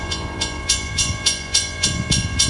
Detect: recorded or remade remade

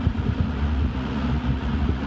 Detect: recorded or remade remade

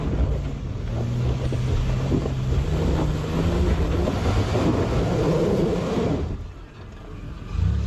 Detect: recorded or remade recorded